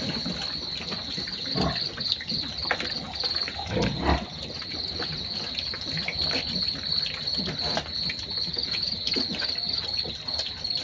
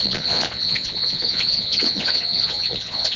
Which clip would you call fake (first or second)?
second